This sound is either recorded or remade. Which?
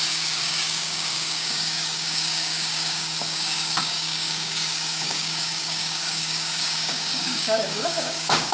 remade